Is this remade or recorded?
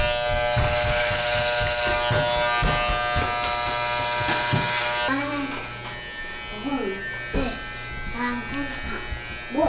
recorded